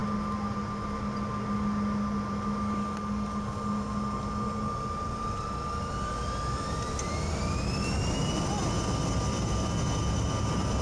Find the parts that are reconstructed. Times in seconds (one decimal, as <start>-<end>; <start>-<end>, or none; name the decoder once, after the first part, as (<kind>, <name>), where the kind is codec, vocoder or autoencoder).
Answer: none